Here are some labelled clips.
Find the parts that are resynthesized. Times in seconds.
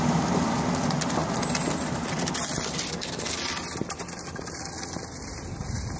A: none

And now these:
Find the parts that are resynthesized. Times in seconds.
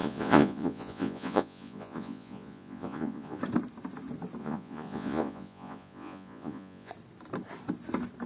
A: 0.0-3.4 (vocoder, Vocos); 4.4-6.9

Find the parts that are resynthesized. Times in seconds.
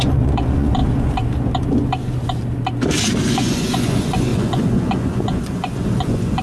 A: 0.0-0.8 (vocoder, Vocos); 3.3-6.4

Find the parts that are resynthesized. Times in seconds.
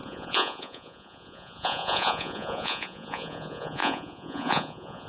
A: 0.0-5.1 (vocoder, Vocos)